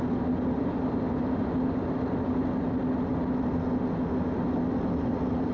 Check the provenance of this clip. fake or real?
real